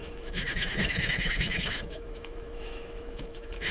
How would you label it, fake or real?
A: fake